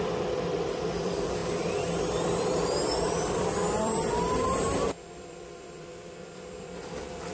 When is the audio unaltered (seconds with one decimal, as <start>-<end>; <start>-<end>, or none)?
none